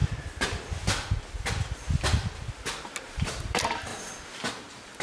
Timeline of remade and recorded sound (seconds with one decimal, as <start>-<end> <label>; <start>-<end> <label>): 0.0-3.0 recorded; 3.0-3.9 remade; 3.9-4.5 recorded; 4.5-5.0 remade